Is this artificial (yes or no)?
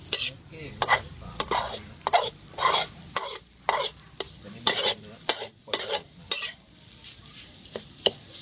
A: yes